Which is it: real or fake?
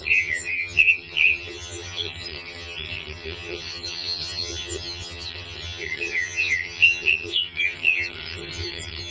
fake